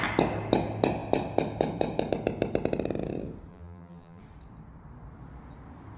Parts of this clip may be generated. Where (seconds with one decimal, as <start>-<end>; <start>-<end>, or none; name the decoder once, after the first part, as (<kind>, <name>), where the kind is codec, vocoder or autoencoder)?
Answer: 3.5-4.2 (vocoder, BigVGAN v2)